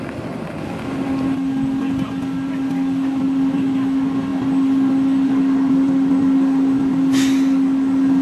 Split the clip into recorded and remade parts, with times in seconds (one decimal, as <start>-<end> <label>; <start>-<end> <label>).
0.0-8.2 recorded